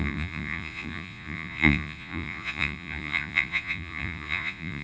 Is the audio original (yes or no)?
no